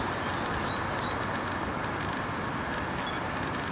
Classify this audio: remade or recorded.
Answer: recorded